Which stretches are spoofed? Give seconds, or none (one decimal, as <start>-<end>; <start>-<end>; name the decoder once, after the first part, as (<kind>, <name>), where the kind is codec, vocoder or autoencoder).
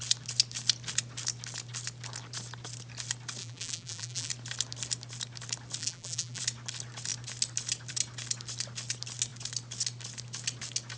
3.4-4.3 (vocoder, BigVGAN v2); 5.8-6.4